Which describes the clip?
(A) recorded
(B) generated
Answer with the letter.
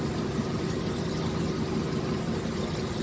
A